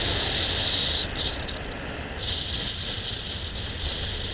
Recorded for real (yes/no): yes